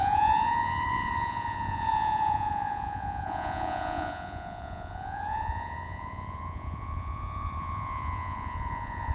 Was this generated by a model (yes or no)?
yes